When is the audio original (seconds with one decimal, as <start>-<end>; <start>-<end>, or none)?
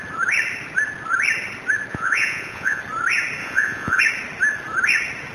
0.0-1.9; 2.8-3.4; 4.0-5.3